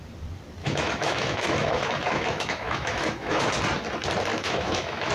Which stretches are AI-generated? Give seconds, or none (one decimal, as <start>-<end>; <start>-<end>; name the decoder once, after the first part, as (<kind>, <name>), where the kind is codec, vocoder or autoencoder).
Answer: 0.6-3.5 (autoencoder, DAC-VAE); 4.3-5.1